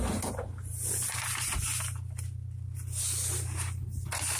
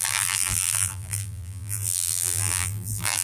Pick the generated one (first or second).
second